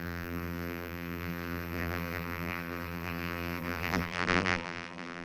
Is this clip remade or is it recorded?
remade